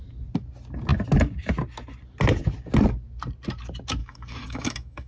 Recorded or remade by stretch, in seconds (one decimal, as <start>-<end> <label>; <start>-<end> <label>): 0.0-4.0 recorded; 4.0-5.1 remade